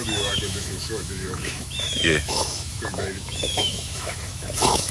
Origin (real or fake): fake